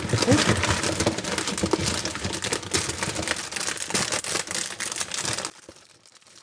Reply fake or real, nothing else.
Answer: real